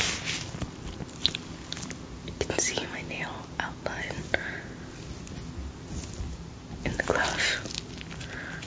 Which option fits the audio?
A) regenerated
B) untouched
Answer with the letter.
B